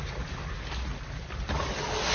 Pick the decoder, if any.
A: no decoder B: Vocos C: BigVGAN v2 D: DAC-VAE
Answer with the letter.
A